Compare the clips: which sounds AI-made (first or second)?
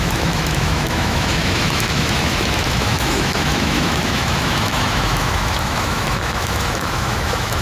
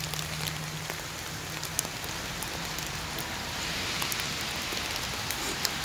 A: first